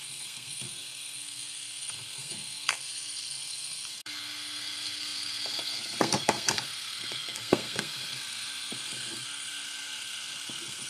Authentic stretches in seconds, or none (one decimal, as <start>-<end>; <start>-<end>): none